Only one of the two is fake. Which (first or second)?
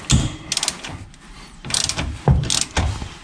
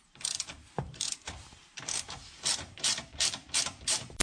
second